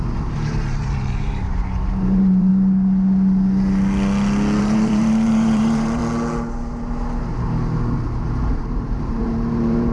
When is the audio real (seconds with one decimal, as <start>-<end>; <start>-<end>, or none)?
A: 2.5-4.6; 6.0-8.5